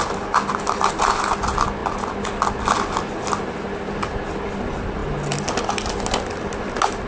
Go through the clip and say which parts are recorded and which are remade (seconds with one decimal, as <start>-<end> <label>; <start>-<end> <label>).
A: 0.0-7.1 recorded